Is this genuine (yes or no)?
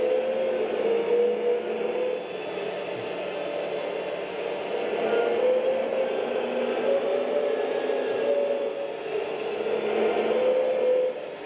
yes